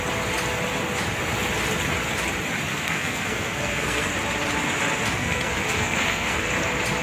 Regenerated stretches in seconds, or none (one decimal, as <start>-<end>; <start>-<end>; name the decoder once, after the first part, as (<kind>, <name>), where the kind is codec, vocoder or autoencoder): 2.7-4.1 (codec, SNAC); 5.2-6.5